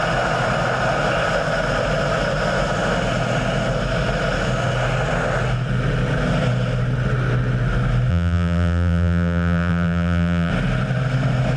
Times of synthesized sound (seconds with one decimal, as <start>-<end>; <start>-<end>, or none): 8.1-10.5